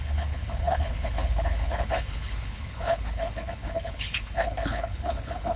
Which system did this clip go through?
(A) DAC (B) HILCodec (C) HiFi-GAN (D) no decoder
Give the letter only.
B